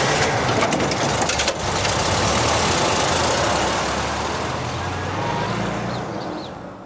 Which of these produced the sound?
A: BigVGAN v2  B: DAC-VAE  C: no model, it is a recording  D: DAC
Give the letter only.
C